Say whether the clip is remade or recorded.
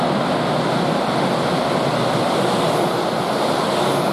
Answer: recorded